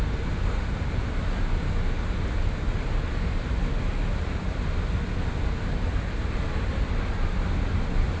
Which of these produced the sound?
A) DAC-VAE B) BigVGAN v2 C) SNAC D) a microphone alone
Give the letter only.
D